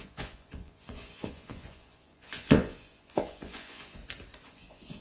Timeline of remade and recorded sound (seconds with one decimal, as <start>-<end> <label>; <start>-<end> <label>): 0.0-4.0 remade; 4.0-4.5 recorded; 4.5-5.0 remade